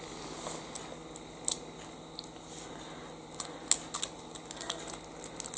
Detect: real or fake real